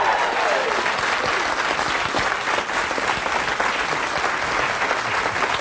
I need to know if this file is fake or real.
real